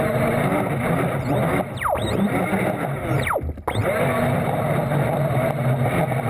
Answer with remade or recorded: recorded